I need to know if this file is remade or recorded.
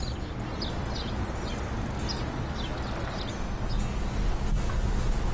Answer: recorded